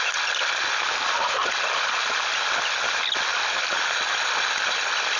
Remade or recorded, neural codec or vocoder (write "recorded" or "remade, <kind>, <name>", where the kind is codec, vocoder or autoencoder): recorded